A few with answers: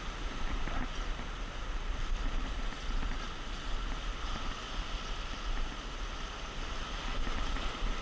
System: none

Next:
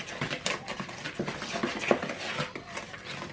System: none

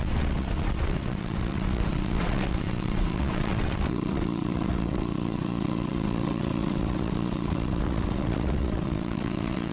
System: vocoder, WaveNeXt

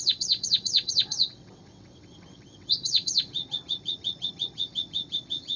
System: vocoder, WaveNeXt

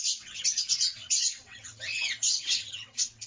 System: vocoder, WaveNeXt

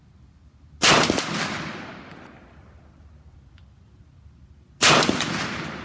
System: none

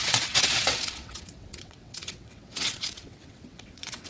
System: vocoder, WaveNeXt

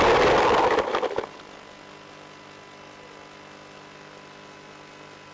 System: none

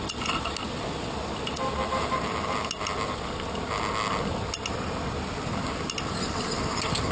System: none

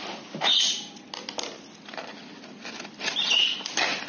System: none